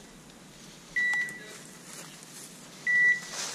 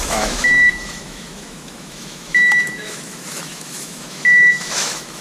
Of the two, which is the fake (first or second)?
second